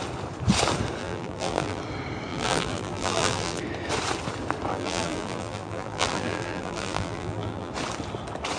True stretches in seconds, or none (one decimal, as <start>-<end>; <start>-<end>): 0.0-1.0; 1.8-2.3; 3.6-4.7; 7.7-8.6